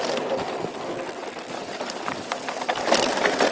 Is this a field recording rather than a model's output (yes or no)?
yes